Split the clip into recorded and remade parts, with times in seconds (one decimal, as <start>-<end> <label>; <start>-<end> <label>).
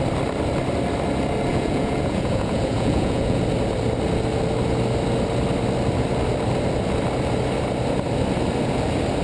0.0-1.5 recorded; 1.5-3.4 remade; 3.4-9.2 recorded